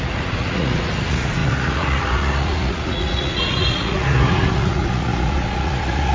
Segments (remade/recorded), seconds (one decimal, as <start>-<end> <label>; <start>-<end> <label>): 0.0-6.1 remade